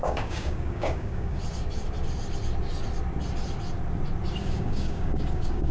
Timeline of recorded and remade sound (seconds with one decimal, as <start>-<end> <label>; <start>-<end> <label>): 0.0-1.4 remade; 1.4-4.4 recorded; 4.4-5.7 remade

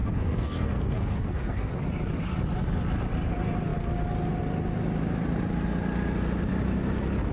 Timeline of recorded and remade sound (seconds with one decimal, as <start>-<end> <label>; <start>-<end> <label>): 0.0-1.7 remade; 1.7-7.3 recorded

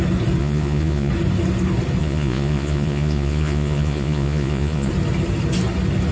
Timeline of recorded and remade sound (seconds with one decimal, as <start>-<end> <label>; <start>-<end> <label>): 0.0-0.4 recorded; 0.4-1.1 remade; 1.1-2.0 recorded; 2.0-4.9 remade; 4.9-6.1 recorded

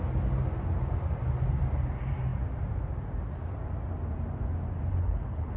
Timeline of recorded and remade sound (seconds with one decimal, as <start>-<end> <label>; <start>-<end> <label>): 0.0-4.9 recorded; 4.9-5.6 remade

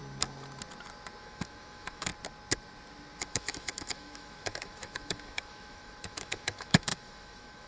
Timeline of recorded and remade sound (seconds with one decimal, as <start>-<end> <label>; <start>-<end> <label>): 0.0-1.2 recorded; 1.2-2.1 remade; 2.1-3.2 recorded; 3.2-7.7 remade